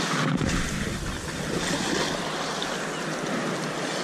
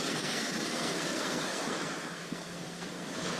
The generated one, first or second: second